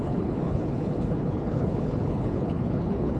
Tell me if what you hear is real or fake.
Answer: fake